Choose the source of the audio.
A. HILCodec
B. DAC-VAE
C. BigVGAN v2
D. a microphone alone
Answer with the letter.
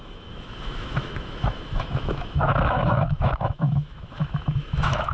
B